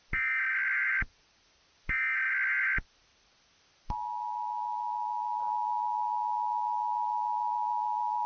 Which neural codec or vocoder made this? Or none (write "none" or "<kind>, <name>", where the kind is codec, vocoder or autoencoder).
none